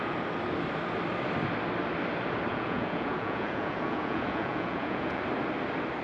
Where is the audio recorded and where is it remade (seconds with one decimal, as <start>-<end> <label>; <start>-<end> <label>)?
0.0-2.5 recorded; 2.5-5.2 remade; 5.2-6.0 recorded